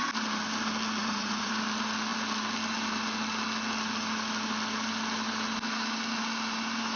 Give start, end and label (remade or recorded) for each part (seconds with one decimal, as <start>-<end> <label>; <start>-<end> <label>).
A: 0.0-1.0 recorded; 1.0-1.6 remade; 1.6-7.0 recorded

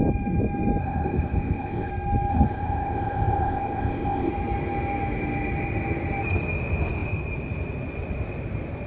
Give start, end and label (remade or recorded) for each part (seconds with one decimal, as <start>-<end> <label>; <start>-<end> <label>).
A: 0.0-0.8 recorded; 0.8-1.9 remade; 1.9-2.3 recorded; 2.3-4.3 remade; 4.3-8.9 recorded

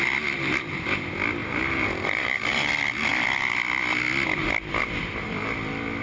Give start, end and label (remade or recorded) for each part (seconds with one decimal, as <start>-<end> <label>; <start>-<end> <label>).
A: 0.0-1.4 recorded; 1.4-2.7 remade; 2.7-6.0 recorded

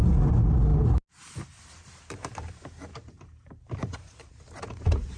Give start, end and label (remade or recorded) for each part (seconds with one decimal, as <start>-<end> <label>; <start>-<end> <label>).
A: 0.0-2.9 recorded; 2.9-5.2 remade

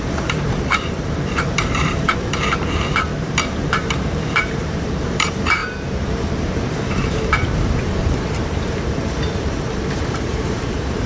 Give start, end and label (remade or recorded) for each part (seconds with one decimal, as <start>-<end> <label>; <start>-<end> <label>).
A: 0.0-11.1 remade